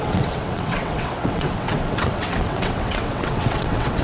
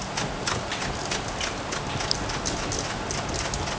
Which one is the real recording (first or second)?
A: second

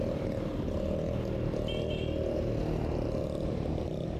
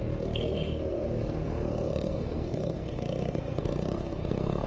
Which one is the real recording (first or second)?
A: first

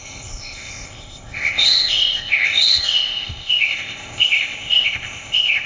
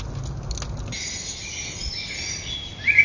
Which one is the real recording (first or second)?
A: second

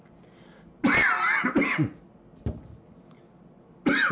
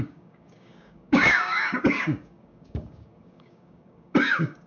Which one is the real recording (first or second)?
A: first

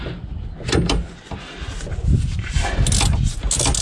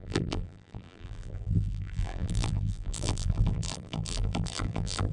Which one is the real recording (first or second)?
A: first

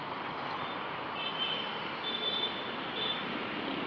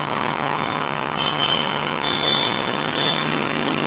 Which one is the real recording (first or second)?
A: first